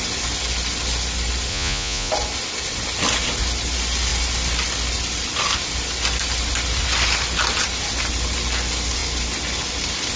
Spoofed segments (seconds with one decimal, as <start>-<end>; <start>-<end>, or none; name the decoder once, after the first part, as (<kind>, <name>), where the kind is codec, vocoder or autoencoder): 1.5-2.1 (vocoder, Vocos)